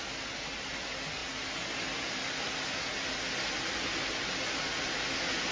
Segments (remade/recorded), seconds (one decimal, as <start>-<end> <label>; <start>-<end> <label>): 0.0-5.5 recorded